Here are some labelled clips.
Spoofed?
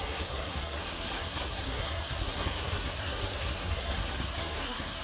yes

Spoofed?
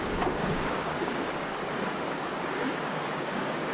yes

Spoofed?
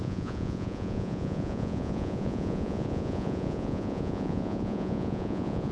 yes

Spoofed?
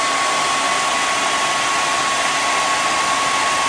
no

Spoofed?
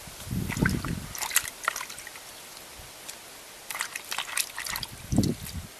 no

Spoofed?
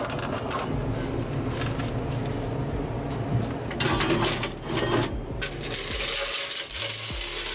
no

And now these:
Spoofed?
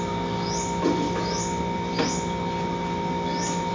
no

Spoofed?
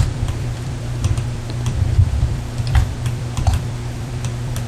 yes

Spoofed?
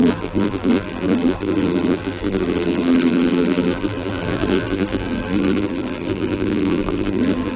yes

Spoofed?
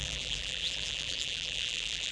yes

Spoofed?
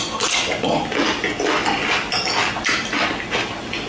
no